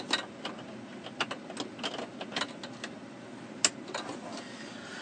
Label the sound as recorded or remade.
recorded